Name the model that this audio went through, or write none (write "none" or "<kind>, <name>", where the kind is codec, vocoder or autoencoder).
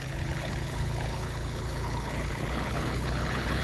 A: codec, HILCodec